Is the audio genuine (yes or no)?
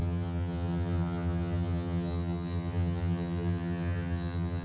no